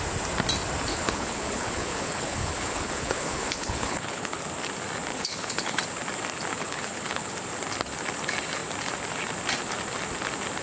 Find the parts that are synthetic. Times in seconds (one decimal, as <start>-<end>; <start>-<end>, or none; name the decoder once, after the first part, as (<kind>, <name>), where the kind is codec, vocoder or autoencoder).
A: 0.9-4.4 (codec, HILCodec); 5.1-5.8; 6.5-7.3